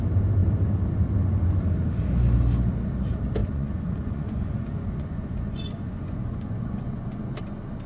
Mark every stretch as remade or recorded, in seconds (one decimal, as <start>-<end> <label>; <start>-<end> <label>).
0.0-3.4 recorded; 3.4-7.4 remade; 7.4-7.9 recorded